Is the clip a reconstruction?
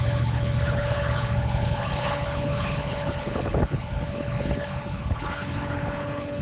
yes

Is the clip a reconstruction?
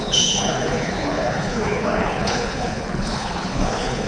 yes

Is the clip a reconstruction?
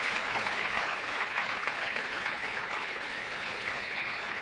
yes